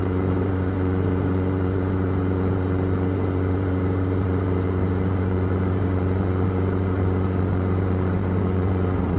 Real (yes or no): no